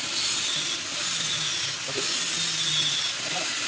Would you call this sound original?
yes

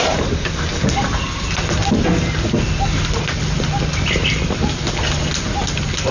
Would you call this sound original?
yes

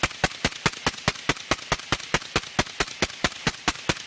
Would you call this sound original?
yes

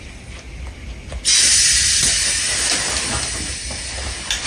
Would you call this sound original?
yes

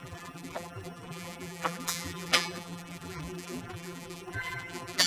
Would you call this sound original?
no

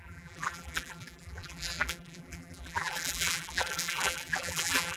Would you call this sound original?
no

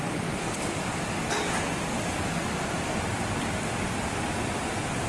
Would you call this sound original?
no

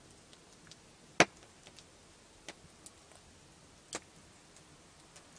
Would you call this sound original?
yes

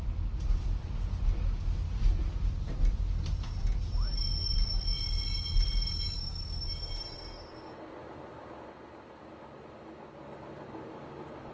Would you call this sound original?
yes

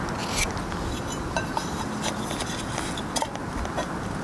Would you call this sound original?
yes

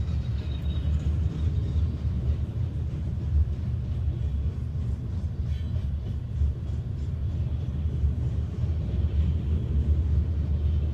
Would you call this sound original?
yes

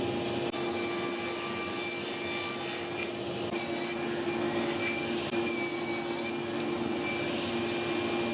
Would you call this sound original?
yes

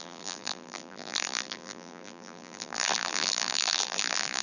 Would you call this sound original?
no